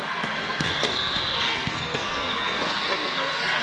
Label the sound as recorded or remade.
remade